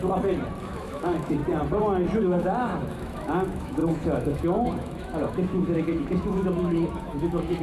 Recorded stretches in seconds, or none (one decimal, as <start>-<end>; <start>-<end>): 0.0-0.6; 1.4-2.2